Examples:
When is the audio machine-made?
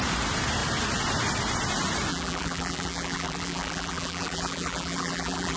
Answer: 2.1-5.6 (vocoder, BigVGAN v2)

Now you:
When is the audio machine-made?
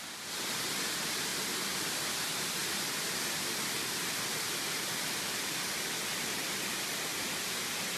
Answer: 0.0-7.1 (vocoder, BigVGAN v2)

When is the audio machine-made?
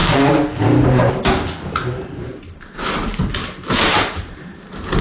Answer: 0.0-5.0 (vocoder, BigVGAN v2)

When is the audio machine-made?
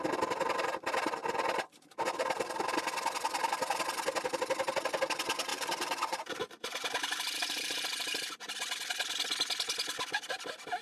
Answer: 5.5-8.4 (vocoder, BigVGAN v2)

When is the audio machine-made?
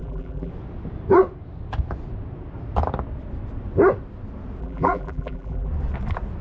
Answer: 0.0-0.5 (vocoder, BigVGAN v2); 4.6-5.7